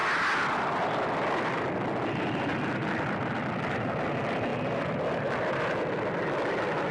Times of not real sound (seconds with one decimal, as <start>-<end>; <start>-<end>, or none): none